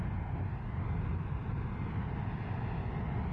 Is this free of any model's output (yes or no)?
yes